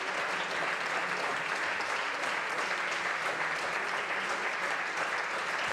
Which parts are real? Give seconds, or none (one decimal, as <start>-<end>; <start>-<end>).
0.0-1.3; 4.2-5.7